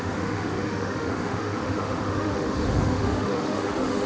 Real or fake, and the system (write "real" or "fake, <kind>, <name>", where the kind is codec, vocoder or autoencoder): fake, autoencoder, DAC-VAE